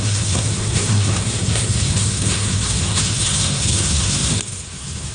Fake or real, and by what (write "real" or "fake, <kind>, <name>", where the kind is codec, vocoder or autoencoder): fake, codec, SNAC